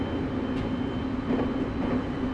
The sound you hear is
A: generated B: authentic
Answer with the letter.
B